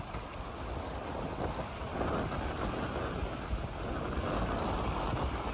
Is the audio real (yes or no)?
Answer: yes